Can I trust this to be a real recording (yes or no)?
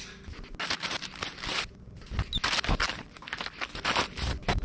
yes